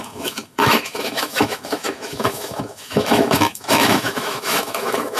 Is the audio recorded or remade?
remade